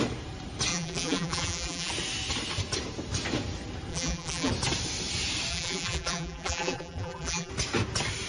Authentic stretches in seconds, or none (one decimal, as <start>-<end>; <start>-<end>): 0.0-0.7; 1.9-3.9; 4.5-5.5; 7.5-8.3